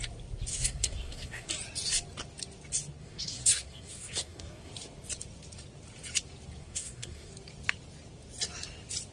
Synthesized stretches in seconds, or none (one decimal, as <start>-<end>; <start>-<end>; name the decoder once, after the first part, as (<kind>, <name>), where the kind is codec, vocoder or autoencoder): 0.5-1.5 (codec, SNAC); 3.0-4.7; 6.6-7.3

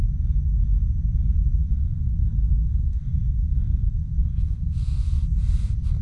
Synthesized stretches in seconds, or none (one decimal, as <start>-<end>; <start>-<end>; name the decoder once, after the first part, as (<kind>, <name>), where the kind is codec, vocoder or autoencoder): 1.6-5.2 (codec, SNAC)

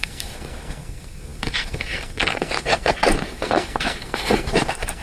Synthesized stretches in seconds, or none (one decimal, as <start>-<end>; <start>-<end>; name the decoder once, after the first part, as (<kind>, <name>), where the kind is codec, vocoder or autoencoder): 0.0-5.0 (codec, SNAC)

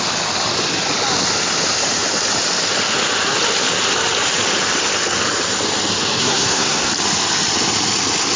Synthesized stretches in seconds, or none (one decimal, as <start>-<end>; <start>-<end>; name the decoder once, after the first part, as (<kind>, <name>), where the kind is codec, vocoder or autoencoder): 6.2-6.9 (codec, SNAC)

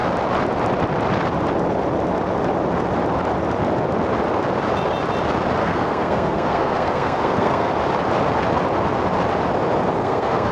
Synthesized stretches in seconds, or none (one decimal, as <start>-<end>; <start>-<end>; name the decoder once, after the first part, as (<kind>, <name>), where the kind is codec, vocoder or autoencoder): 5.6-7.7 (codec, SNAC); 10.0-10.5

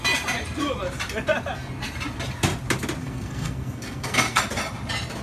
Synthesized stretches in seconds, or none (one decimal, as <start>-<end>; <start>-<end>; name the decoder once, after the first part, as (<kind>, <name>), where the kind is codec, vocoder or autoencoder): 3.0-4.4 (codec, SNAC)